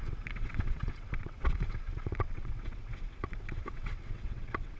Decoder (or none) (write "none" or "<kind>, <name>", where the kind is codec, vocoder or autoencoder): vocoder, WaveNeXt